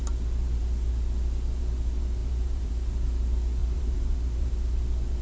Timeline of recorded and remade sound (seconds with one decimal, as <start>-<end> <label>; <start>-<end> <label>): 0.0-2.2 recorded; 2.2-2.7 remade; 2.7-3.6 recorded; 3.6-4.5 remade; 4.5-5.2 recorded